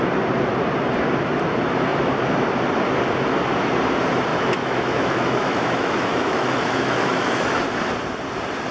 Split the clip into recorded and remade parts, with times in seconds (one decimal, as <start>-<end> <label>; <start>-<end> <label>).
0.0-4.3 recorded; 4.3-7.6 remade; 7.6-8.7 recorded